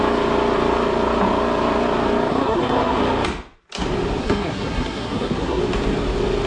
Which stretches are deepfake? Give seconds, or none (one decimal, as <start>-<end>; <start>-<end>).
2.3-3.0; 4.2-5.6

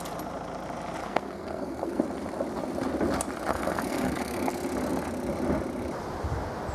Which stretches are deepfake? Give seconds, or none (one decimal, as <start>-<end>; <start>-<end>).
1.0-2.0; 3.5-4.5

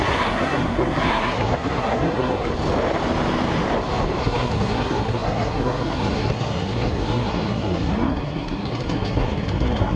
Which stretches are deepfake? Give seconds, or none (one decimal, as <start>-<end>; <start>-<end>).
0.0-2.5; 4.2-10.0

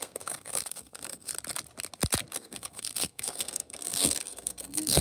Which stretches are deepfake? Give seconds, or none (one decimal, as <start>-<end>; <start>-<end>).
0.0-1.3; 2.3-5.0

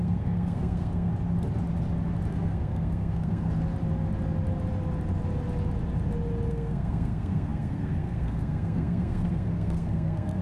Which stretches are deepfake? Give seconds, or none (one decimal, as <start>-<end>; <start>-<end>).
0.0-1.1; 2.3-3.5; 6.5-10.4

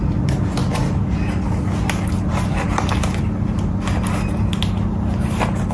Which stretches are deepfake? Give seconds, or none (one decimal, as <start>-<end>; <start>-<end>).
none